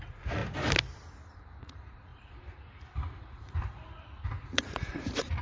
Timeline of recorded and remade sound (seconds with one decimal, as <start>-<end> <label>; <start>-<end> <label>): 0.0-0.4 remade; 0.4-1.6 recorded; 1.6-5.4 remade